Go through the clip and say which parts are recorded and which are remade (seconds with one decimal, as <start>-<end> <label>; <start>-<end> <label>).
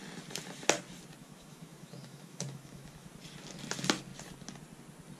0.0-1.2 recorded; 1.2-3.1 remade; 3.1-5.2 recorded